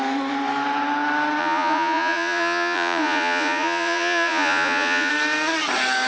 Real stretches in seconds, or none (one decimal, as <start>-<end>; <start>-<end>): 0.0-1.4; 5.1-6.1